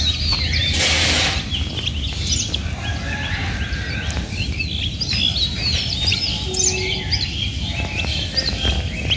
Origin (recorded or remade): recorded